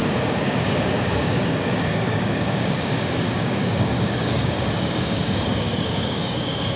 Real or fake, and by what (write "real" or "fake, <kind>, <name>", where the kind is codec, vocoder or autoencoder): fake, codec, DAC